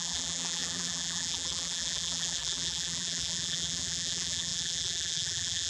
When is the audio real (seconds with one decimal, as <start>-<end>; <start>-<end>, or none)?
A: none